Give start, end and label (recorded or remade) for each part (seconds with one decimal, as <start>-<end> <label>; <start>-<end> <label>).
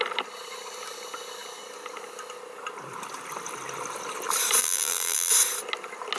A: 0.0-4.6 recorded; 4.6-5.3 remade; 5.3-6.2 recorded